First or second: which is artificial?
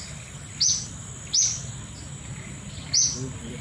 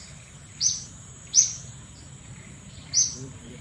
second